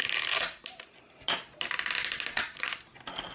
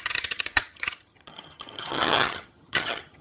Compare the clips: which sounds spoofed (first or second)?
second